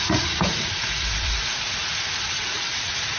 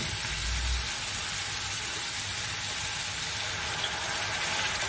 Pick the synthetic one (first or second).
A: first